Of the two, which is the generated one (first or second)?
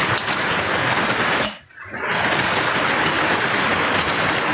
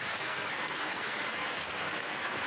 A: second